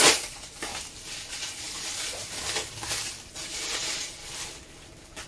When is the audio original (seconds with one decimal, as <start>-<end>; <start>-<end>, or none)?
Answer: 0.7-1.3; 2.2-3.3; 4.2-5.3